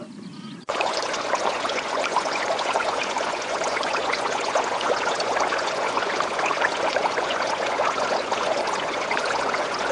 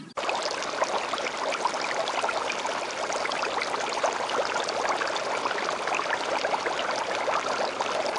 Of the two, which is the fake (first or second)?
first